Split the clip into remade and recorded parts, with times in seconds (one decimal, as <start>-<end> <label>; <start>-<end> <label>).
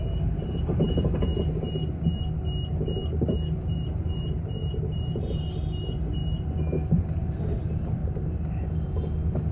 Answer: 0.0-1.3 remade; 1.3-3.7 recorded; 3.7-6.2 remade; 6.2-7.0 recorded; 7.0-8.0 remade; 8.0-9.5 recorded